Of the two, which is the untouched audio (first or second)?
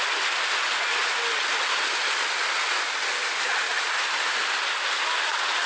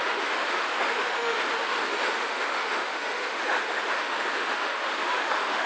first